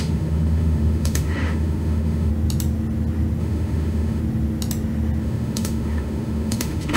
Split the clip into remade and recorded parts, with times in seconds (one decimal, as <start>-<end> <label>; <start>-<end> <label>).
0.0-2.3 remade; 2.3-3.4 recorded; 3.4-4.2 remade; 4.2-5.2 recorded; 5.2-7.0 remade